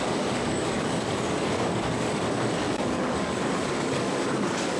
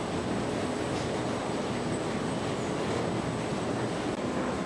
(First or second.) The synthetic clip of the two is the first